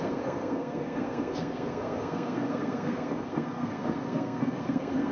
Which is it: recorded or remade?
remade